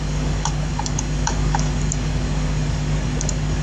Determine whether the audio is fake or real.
fake